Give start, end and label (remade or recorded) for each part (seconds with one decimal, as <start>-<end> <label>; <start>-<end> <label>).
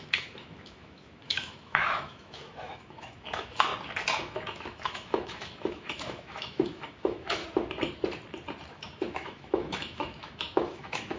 0.0-3.7 remade; 3.7-4.2 recorded; 4.2-7.4 remade; 7.4-8.7 recorded; 8.7-11.2 remade